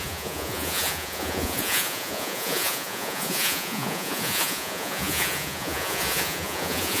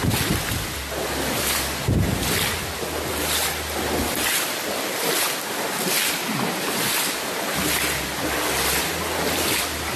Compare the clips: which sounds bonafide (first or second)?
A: second